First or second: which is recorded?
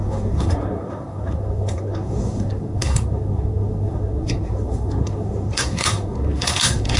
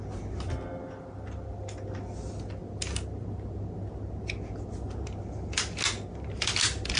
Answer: second